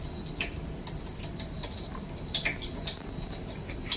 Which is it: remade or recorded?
recorded